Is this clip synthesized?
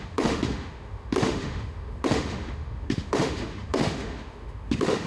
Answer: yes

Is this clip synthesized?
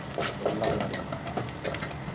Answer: no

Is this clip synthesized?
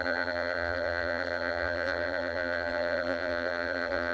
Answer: yes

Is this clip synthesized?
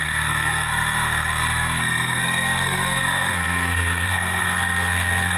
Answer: yes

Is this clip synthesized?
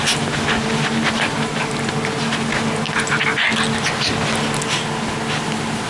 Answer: no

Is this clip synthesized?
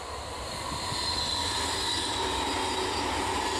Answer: no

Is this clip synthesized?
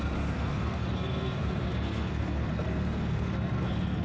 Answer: yes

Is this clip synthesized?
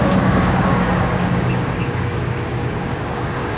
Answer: yes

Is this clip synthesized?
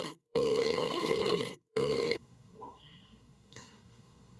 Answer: yes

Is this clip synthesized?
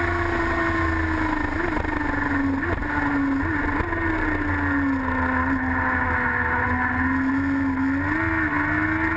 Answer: no